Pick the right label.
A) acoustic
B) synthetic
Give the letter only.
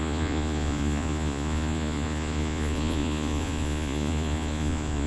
B